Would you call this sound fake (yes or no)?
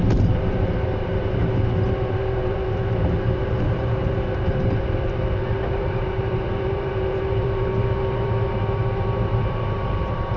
yes